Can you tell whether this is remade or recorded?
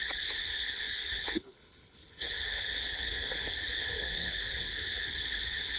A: remade